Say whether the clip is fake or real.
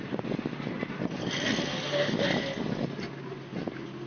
real